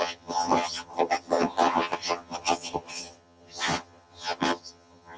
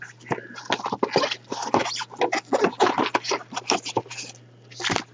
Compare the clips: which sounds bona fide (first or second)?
second